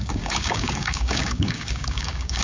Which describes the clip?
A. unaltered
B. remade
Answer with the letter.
B